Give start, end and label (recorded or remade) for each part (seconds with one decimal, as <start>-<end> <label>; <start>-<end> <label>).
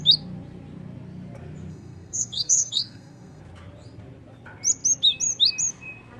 0.0-1.7 recorded; 1.7-3.4 remade; 3.4-6.2 recorded